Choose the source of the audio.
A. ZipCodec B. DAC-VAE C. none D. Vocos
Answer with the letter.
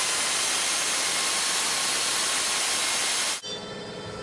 C